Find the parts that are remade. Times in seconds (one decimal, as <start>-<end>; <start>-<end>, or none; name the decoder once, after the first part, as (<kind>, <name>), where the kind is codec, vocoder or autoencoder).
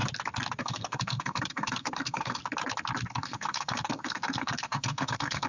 0.6-2.4 (codec, SNAC); 3.1-5.5